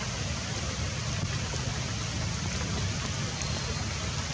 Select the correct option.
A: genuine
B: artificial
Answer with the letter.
A